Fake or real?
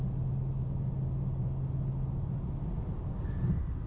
real